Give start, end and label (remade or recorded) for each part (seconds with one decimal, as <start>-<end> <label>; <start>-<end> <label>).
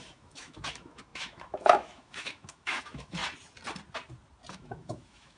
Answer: 0.0-3.2 remade; 3.2-4.5 recorded; 4.5-5.4 remade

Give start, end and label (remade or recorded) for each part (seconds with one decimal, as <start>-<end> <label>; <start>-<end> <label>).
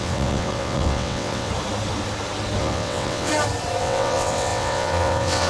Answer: 0.0-1.5 remade; 1.5-2.6 recorded; 2.6-3.3 remade; 3.3-3.8 recorded; 3.8-5.5 remade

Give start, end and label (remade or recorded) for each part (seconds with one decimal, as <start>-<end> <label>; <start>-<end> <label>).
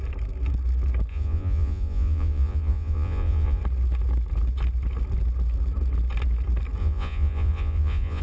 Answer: 0.0-1.1 recorded; 1.1-3.6 remade; 3.6-6.8 recorded; 6.8-8.2 remade